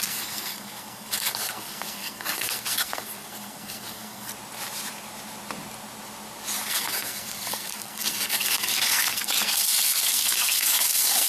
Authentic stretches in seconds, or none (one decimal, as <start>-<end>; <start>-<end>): 4.3-6.7